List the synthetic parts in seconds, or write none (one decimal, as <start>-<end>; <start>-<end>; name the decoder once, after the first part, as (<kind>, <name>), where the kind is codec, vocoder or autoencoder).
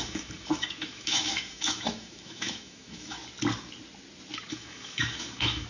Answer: 0.0-3.2 (autoencoder, DAC-VAE); 4.5-5.7